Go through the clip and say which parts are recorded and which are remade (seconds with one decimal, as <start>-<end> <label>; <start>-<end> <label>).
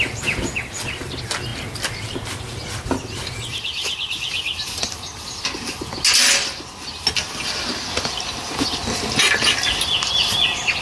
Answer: 0.0-10.8 recorded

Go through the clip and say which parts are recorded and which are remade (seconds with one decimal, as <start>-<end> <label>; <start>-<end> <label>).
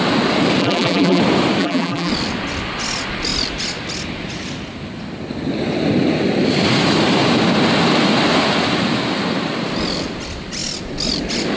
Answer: 0.0-0.6 recorded; 0.6-1.2 remade; 1.2-1.6 recorded; 1.6-2.1 remade; 2.1-11.6 recorded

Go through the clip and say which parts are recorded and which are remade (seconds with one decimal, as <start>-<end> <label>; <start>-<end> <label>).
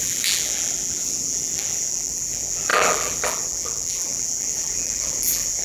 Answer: 0.0-5.6 remade